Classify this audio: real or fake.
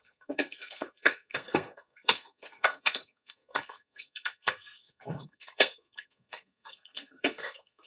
fake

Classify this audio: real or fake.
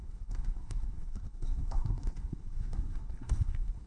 fake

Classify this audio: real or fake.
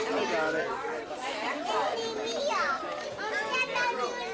real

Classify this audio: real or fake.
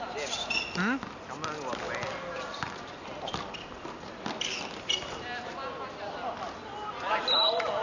real